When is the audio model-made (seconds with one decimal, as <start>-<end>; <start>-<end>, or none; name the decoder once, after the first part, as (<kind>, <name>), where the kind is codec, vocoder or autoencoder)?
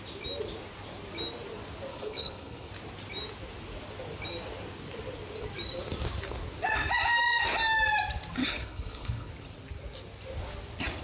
1.9-2.7 (codec, HILCodec); 8.4-9.3